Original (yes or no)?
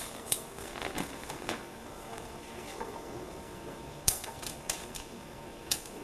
no